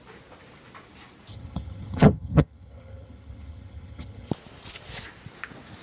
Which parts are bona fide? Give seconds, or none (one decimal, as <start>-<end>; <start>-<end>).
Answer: 0.0-1.3; 4.3-5.8